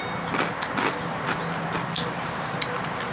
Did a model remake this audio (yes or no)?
no